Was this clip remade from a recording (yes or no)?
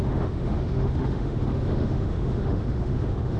yes